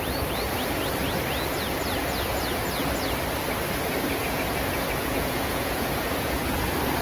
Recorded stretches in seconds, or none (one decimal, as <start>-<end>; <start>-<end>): 0.0-2.0; 2.6-4.2; 6.4-7.0